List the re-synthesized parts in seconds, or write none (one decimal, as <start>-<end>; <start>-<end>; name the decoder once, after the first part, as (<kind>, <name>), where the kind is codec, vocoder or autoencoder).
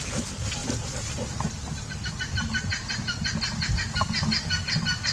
none